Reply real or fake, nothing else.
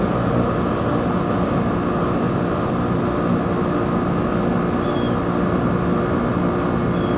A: real